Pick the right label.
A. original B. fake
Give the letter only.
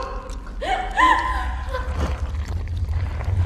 A